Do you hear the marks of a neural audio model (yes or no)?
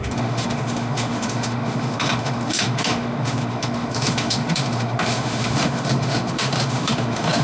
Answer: yes